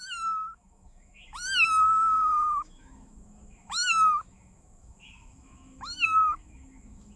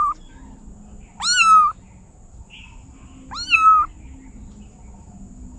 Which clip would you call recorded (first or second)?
second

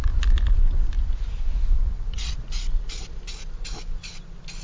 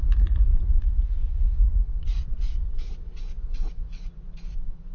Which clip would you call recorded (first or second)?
first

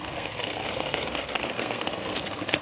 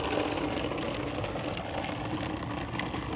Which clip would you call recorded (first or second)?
second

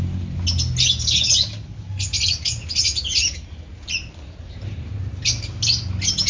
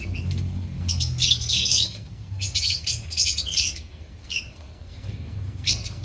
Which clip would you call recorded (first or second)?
first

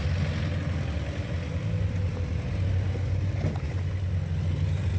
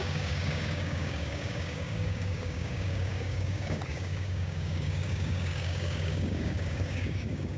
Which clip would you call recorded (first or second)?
first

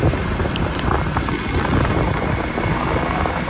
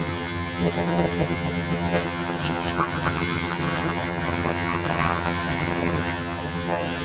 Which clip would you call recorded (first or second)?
first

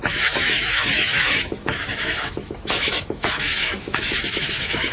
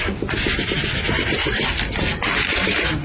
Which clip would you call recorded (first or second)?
second